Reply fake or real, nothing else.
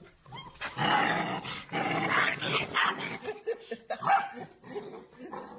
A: real